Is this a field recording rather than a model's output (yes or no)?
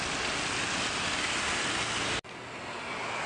yes